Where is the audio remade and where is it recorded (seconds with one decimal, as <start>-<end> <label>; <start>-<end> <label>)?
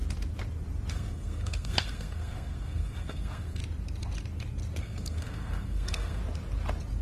0.0-0.9 recorded; 0.9-3.6 remade; 3.6-4.8 recorded; 4.8-6.2 remade; 6.2-7.0 recorded